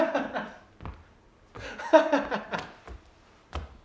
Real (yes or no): yes